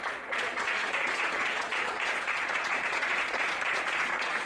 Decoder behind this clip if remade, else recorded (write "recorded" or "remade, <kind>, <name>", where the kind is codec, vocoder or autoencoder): remade, vocoder, Vocos